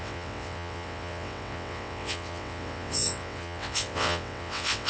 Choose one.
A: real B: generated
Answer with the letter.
B